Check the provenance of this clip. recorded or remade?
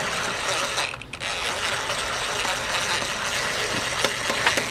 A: recorded